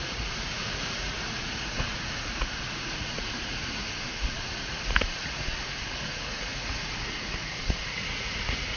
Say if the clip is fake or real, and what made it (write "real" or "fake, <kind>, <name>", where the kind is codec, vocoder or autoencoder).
fake, vocoder, Vocos